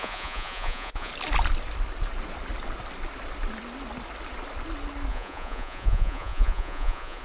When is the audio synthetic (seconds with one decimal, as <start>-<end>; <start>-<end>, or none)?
0.0-1.1; 5.1-7.2